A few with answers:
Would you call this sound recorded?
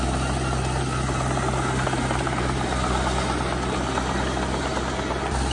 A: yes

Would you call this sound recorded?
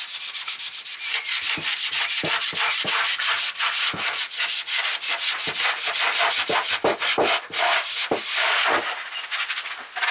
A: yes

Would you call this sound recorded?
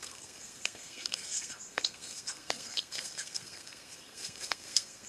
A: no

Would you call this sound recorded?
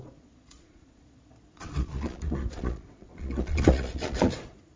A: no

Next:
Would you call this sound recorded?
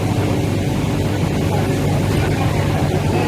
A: yes